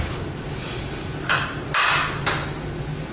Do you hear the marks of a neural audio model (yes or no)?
no